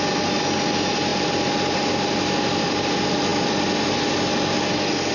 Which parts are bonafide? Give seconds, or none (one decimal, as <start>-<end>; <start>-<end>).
0.0-5.1